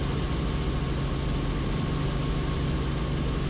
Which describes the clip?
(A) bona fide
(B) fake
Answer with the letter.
A